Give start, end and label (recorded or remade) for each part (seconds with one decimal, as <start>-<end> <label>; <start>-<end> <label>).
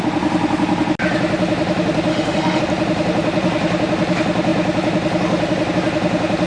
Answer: 0.0-2.1 recorded; 2.1-2.6 remade; 2.6-6.5 recorded